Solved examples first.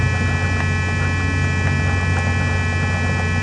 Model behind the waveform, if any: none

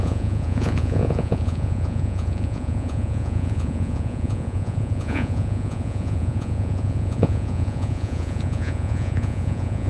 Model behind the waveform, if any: vocoder, Vocos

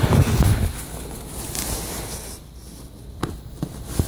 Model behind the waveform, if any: none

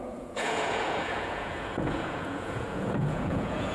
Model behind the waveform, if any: vocoder, Vocos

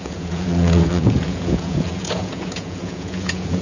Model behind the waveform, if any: vocoder, Vocos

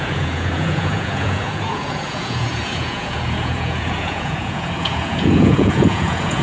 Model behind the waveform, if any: vocoder, Vocos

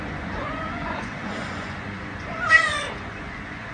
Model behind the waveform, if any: vocoder, Vocos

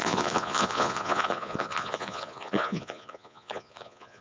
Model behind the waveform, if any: vocoder, Vocos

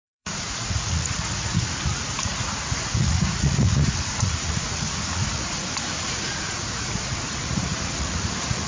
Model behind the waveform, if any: vocoder, Vocos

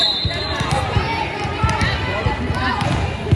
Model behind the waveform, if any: none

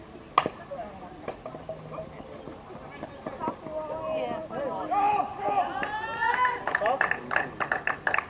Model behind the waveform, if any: none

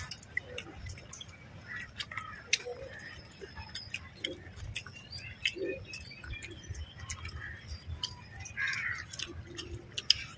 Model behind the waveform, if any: none